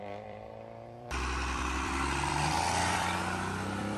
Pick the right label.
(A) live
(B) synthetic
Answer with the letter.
B